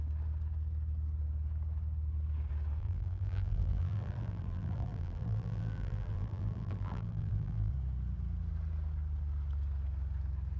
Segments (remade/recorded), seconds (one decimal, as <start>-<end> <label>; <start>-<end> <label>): 0.0-2.8 recorded; 2.8-7.7 remade; 7.7-10.6 recorded